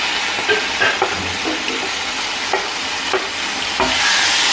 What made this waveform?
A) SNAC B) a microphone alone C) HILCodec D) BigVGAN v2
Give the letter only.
B